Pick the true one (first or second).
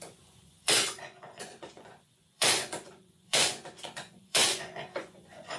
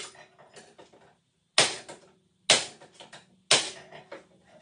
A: second